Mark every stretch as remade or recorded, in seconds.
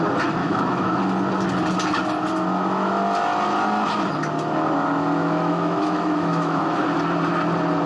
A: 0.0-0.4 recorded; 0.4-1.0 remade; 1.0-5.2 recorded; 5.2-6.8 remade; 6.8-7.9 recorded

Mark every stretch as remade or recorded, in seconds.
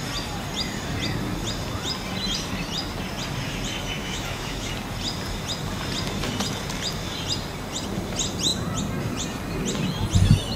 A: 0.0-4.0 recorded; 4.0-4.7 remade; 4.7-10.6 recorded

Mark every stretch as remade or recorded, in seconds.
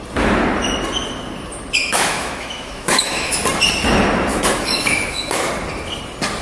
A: 0.0-1.8 recorded; 1.8-3.4 remade; 3.4-4.3 recorded; 4.3-5.5 remade; 5.5-6.4 recorded